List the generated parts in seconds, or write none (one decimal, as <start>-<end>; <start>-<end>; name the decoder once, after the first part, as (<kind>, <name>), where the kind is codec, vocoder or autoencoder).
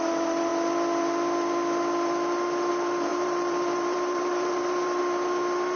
3.1-5.0 (vocoder, BigVGAN v2)